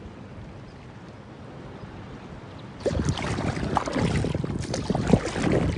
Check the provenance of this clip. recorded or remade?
recorded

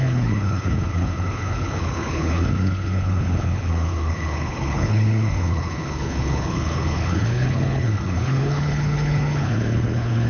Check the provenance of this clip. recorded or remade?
remade